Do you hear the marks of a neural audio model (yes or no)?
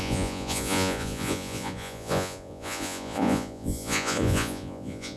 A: yes